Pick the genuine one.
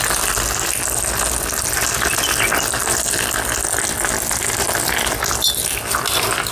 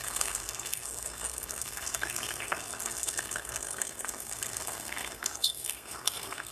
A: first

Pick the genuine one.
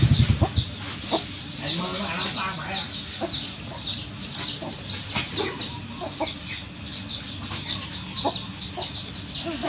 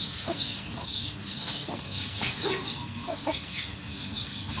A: first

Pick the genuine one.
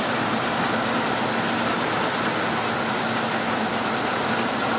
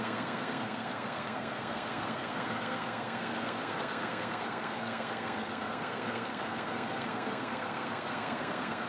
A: first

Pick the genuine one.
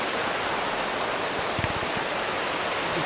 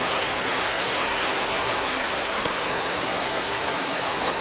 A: first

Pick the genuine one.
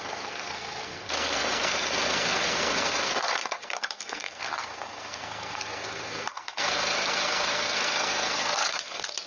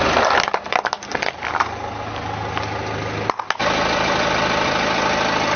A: second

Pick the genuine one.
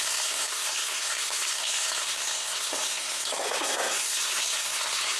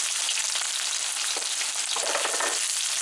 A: second